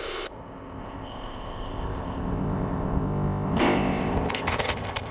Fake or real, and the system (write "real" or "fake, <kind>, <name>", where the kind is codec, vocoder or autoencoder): fake, codec, ZipCodec